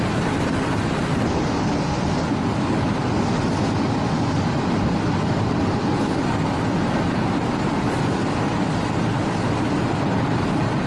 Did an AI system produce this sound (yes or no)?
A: no